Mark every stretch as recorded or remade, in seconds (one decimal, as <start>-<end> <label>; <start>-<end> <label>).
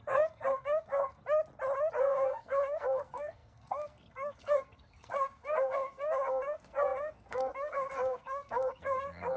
0.0-1.2 remade; 1.2-2.0 recorded; 2.0-9.4 remade